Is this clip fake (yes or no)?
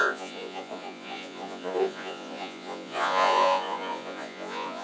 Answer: yes